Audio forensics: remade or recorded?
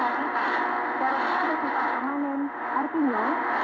recorded